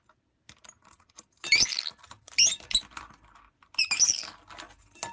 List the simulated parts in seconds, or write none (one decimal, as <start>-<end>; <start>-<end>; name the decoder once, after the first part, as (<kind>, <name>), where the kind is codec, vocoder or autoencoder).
none